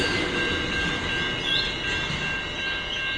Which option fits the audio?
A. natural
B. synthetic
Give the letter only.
A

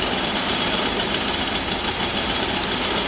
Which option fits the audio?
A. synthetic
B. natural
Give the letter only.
B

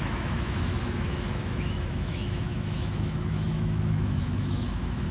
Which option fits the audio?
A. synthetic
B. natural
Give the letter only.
A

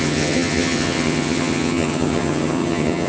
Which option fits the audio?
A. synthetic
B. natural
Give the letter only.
A